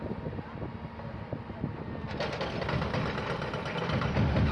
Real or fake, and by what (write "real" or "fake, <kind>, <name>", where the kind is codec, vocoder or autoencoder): real